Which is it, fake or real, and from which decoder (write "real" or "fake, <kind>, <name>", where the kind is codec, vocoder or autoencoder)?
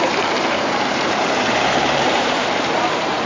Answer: fake, vocoder, BigVGAN v2